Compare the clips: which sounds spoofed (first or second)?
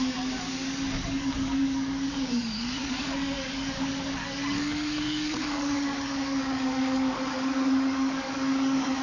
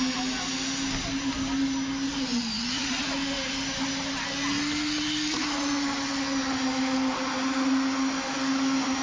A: first